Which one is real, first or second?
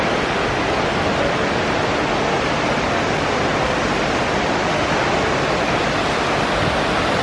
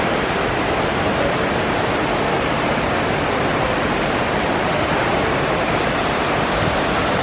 first